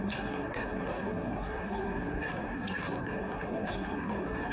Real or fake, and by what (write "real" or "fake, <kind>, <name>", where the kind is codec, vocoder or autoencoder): fake, codec, SNAC